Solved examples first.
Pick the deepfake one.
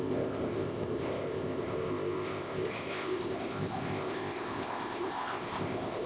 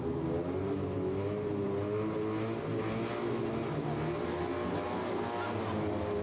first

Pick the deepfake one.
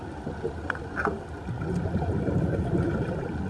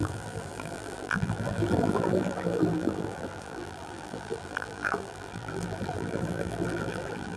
second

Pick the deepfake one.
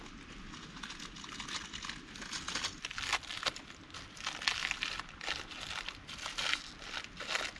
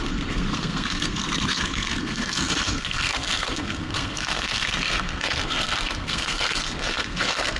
second